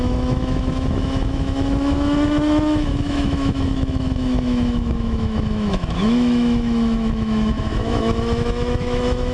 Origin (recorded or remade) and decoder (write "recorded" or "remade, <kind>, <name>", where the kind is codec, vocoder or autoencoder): remade, autoencoder, DAC-VAE